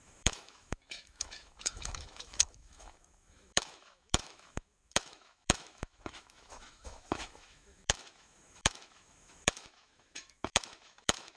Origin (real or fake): fake